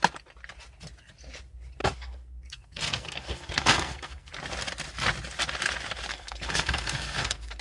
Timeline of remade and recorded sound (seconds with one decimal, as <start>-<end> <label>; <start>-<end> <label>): 0.0-1.8 recorded; 1.8-4.3 remade; 4.3-6.1 recorded; 6.1-7.6 remade